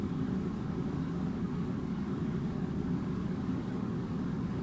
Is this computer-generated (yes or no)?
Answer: yes